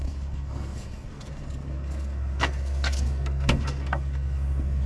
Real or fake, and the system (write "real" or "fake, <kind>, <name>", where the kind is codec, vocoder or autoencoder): fake, codec, SNAC